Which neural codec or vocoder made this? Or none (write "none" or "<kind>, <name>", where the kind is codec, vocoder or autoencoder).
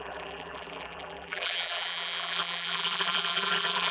vocoder, BigVGAN v2